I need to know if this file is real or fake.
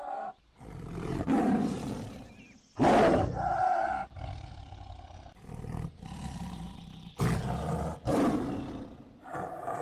real